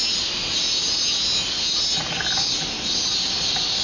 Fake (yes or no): no